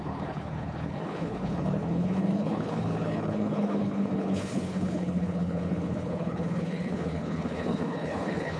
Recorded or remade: remade